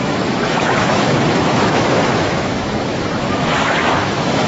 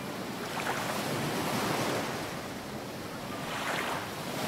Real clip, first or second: second